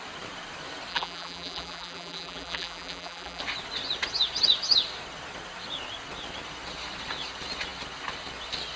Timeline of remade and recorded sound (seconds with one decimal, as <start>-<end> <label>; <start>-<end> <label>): 0.0-0.9 recorded; 0.9-3.4 remade; 3.4-8.8 recorded